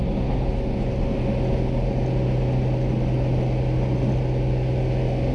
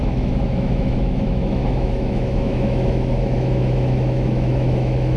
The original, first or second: first